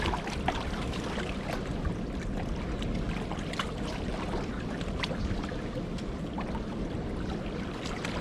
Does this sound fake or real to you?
real